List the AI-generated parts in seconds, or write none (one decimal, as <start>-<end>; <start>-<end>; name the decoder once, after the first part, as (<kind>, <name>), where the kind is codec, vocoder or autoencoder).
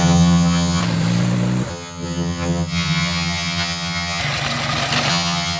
0.0-0.8 (vocoder, HiFi-GAN); 1.7-4.2; 5.1-5.6